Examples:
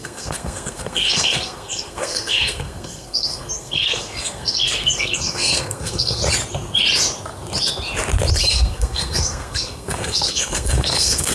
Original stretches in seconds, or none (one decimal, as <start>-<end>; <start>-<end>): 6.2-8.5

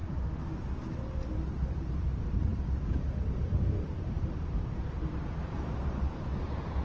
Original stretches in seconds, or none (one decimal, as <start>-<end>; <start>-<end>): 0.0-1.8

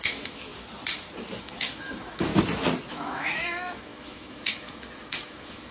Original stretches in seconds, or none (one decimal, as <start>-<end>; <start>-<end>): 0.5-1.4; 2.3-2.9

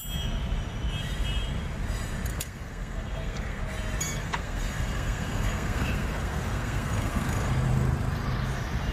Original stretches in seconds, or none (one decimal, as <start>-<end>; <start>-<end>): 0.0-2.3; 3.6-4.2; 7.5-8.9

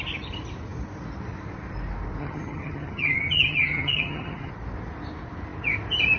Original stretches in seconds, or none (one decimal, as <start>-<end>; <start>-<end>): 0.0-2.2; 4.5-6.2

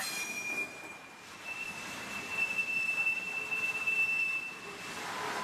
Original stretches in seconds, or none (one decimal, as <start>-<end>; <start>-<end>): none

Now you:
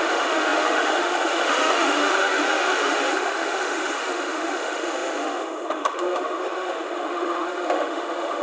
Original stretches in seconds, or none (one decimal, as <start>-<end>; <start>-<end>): none